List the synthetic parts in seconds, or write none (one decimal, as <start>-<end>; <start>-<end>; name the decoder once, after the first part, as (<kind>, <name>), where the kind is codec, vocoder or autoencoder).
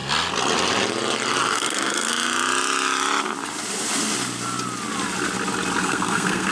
1.5-2.1 (codec, SNAC); 5.8-6.5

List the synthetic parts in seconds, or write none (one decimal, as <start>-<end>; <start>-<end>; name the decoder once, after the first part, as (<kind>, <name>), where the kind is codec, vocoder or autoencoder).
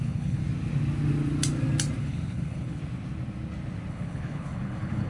0.0-0.4 (codec, HILCodec); 2.0-2.8; 3.9-5.1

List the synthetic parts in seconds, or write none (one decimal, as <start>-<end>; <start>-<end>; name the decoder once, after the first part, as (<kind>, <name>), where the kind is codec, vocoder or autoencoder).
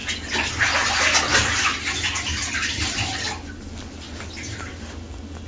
none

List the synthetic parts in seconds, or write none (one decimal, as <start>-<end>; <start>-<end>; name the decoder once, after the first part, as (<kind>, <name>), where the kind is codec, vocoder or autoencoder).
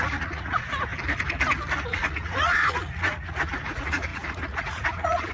0.0-0.9 (vocoder, Vocos); 1.8-5.3